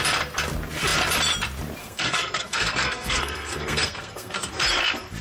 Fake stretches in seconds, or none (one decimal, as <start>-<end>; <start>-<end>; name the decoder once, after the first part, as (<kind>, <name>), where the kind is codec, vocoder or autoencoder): 1.8-4.5 (codec, SNAC)